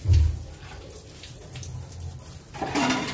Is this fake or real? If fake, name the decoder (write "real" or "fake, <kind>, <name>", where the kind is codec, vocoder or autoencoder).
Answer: real